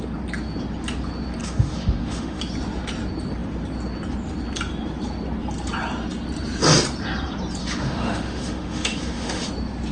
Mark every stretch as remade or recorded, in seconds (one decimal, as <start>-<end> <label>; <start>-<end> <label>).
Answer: 0.0-1.4 recorded; 1.4-2.4 remade; 2.4-7.6 recorded; 7.6-9.5 remade; 9.5-9.9 recorded